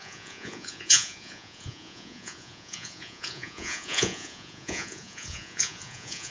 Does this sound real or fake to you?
fake